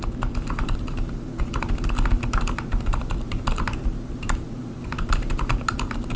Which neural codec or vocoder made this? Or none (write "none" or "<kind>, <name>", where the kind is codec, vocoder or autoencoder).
none